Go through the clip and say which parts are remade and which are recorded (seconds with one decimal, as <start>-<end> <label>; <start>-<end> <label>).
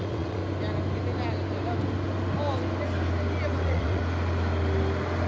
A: 0.0-0.4 remade; 0.4-3.6 recorded; 3.6-4.0 remade; 4.0-5.3 recorded